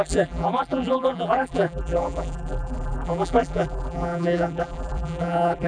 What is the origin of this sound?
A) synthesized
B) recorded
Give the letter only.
A